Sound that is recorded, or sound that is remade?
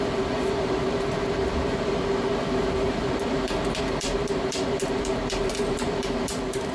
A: remade